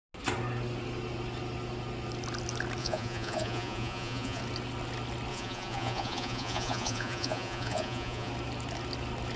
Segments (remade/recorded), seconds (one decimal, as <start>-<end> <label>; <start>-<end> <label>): 0.0-2.8 recorded; 2.8-4.4 remade; 4.4-5.3 recorded; 5.3-8.3 remade; 8.3-9.4 recorded